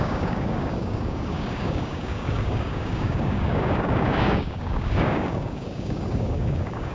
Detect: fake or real fake